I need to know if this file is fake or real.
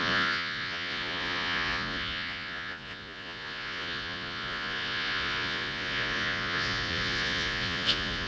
fake